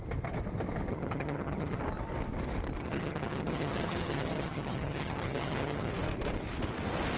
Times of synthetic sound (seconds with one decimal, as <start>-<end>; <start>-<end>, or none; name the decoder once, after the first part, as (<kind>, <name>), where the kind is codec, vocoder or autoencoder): 0.9-1.8 (vocoder, HiFi-GAN); 2.8-5.9